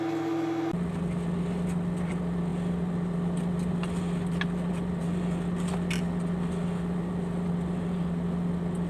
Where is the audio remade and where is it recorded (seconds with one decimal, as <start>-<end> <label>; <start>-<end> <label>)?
0.0-8.9 recorded